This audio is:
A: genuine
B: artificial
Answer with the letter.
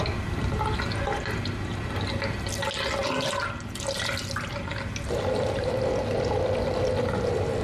A